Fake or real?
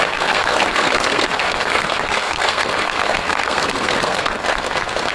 fake